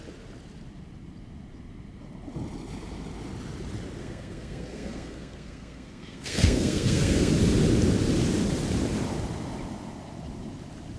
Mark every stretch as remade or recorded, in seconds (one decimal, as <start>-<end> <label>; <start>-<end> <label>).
0.0-4.0 recorded; 4.0-7.3 remade; 7.3-11.0 recorded